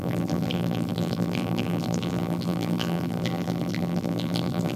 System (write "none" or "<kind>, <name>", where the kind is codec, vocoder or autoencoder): vocoder, BigVGAN v2